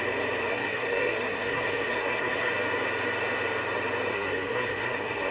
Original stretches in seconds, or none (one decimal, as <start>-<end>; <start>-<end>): 0.0-0.5; 2.5-4.1